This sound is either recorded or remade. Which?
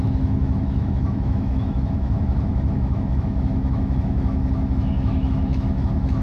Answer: remade